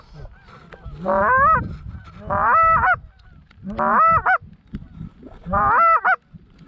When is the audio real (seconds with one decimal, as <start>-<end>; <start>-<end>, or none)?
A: 0.0-6.7